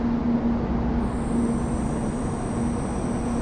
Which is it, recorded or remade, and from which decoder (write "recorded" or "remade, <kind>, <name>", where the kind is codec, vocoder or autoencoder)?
recorded